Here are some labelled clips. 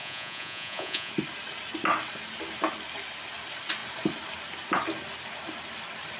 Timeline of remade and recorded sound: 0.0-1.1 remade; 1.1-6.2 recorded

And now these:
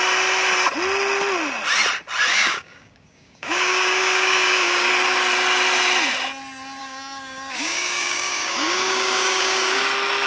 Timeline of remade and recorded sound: 0.0-2.3 recorded; 2.3-4.9 remade; 4.9-6.8 recorded; 6.8-9.8 remade; 9.8-10.3 recorded

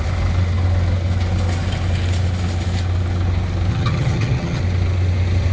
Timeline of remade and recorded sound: 0.0-3.7 recorded; 3.7-4.6 remade; 4.6-5.5 recorded